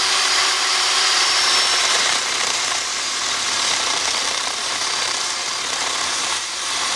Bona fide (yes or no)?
no